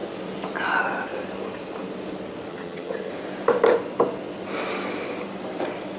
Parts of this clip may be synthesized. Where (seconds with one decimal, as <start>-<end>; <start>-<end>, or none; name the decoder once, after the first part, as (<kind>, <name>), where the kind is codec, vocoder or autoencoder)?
2.5-3.1 (vocoder, HiFi-GAN)